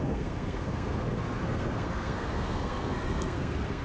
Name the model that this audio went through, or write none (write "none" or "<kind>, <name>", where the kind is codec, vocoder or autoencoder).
codec, SNAC